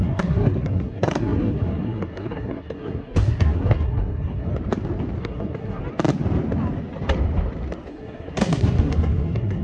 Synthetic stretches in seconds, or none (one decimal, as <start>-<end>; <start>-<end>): 0.0-4.5; 5.2-5.8; 7.9-9.6